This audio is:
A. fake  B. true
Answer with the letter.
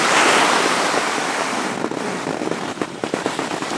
A